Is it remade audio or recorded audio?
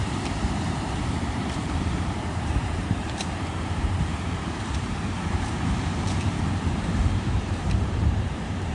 remade